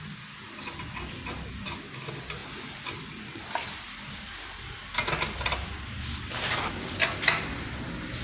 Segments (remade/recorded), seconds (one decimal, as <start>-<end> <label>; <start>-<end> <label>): 0.0-8.2 recorded